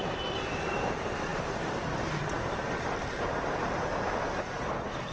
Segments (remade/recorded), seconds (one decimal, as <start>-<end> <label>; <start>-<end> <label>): 0.0-5.1 remade